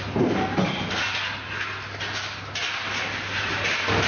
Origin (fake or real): real